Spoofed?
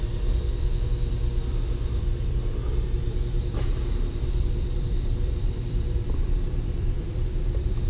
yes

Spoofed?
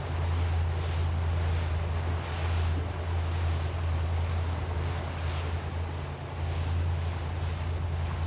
no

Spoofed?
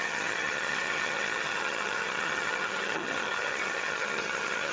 yes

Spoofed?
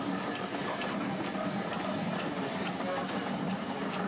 no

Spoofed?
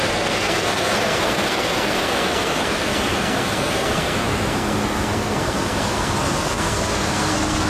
yes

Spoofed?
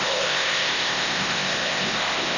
yes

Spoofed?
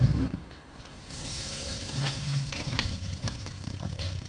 yes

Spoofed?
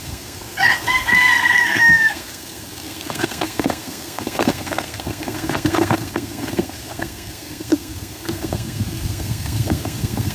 yes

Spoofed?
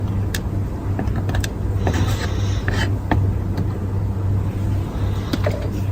no